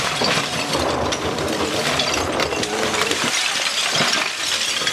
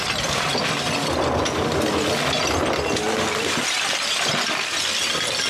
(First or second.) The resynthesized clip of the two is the first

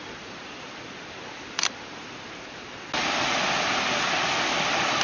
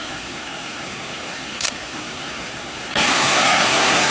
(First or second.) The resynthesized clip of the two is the second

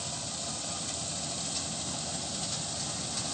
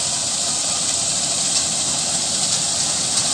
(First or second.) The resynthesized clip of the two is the second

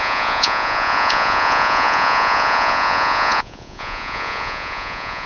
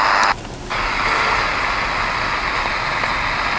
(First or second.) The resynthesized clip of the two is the first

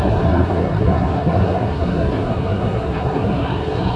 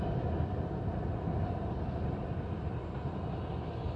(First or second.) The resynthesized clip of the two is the first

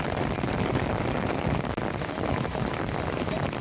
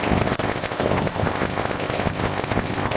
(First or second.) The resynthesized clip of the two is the second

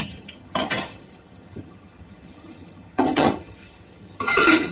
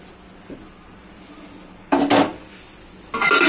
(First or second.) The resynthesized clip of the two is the first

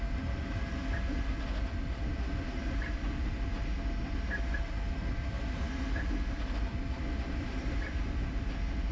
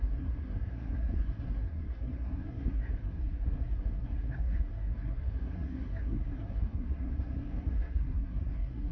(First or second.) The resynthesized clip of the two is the second